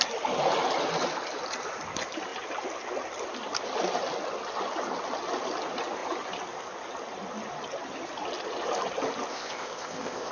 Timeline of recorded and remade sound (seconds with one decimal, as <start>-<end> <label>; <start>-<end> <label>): 0.0-9.3 recorded; 9.3-10.3 remade